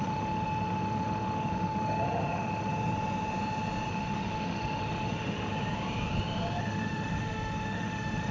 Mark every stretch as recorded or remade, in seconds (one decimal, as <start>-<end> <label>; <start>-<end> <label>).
0.0-2.7 remade; 2.7-3.9 recorded; 3.9-5.5 remade; 5.5-6.6 recorded; 6.6-8.3 remade